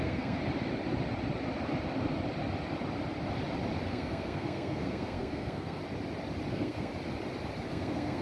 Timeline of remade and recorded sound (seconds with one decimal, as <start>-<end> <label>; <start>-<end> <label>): 0.0-0.4 remade; 0.4-3.9 recorded; 3.9-5.8 remade; 5.8-6.5 recorded; 6.5-6.9 remade; 6.9-7.7 recorded; 7.7-8.2 remade